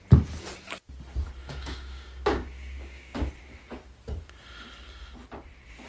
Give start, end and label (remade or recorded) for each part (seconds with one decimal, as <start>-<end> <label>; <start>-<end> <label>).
0.0-1.4 recorded; 1.4-3.3 remade; 3.3-5.9 recorded